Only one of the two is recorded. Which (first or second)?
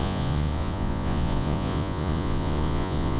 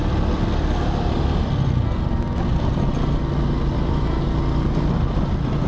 second